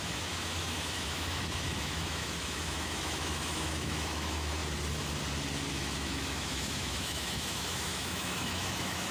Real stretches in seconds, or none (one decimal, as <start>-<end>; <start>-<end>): 4.6-5.7